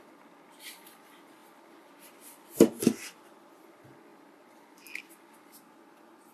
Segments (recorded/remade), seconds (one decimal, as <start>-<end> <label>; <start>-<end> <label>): 0.0-6.3 recorded